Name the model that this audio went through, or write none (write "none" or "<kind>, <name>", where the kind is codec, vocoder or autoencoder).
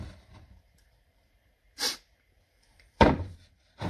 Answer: vocoder, BigVGAN v2